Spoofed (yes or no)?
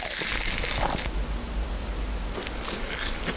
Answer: no